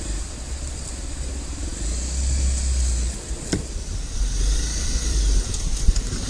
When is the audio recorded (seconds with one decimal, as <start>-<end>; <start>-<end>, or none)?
1.7-3.1